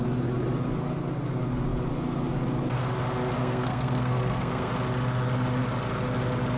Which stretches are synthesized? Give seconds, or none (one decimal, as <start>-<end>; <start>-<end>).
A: 3.4-4.7